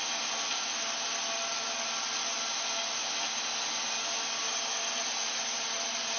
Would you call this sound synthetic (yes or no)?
no